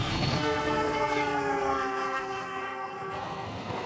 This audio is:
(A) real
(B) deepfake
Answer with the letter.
B